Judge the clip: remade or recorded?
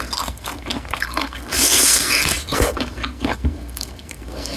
remade